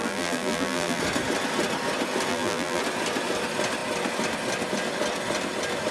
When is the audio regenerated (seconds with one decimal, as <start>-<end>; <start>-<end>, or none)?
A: 0.0-1.0; 2.3-2.8